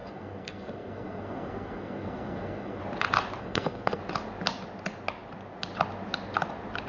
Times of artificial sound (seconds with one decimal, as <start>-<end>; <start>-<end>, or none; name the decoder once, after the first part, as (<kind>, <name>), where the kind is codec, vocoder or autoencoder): 0.0-2.8 (codec, SNAC); 3.4-4.0